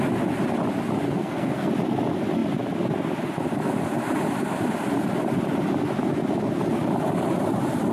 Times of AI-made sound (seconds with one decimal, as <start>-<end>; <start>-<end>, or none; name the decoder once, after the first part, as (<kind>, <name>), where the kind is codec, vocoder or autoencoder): 1.1-1.7 (codec, SNAC)